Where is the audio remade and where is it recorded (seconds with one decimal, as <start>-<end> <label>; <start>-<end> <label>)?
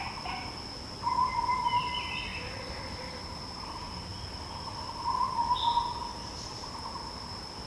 0.0-7.7 recorded